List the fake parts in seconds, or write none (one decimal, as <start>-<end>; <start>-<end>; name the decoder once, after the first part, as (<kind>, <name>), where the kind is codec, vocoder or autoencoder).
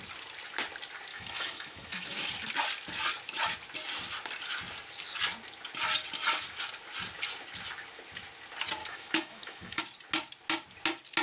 1.1-2.3 (autoencoder, DAC-VAE); 8.8-9.8